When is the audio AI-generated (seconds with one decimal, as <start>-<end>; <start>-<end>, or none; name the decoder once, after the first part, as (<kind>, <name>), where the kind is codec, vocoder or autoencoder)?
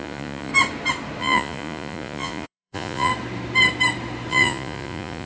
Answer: 0.0-0.5 (vocoder, Vocos); 1.2-3.1; 4.3-5.3